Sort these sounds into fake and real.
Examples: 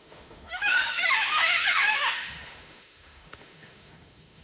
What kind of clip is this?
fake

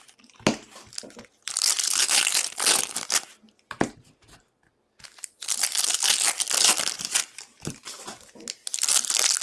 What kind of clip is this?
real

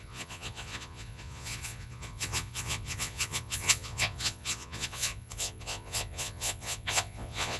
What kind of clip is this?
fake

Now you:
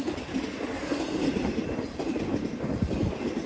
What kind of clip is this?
real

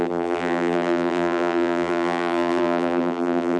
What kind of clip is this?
fake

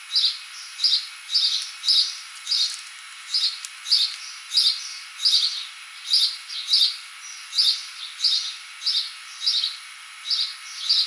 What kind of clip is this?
real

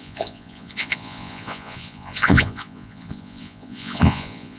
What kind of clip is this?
fake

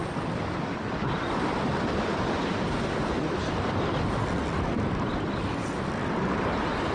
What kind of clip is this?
real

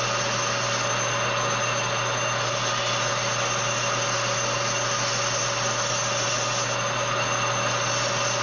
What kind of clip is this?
real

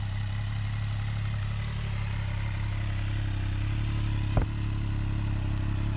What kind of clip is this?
real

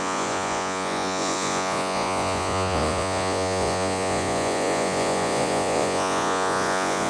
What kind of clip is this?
fake